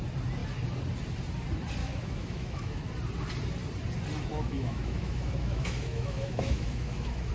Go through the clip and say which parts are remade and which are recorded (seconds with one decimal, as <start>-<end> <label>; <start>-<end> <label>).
0.0-1.8 recorded; 1.8-2.9 remade; 2.9-4.3 recorded; 4.3-7.3 remade